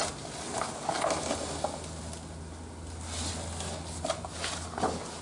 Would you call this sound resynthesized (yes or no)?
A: no